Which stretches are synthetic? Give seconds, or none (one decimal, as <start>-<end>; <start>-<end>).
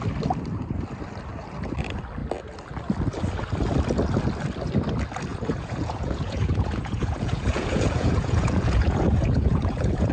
5.3-10.1